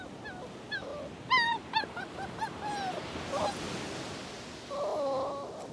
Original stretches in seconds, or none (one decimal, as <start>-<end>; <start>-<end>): 0.0-5.7